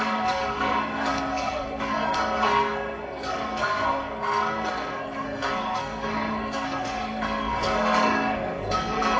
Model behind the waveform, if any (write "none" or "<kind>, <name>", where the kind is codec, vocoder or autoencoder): codec, SNAC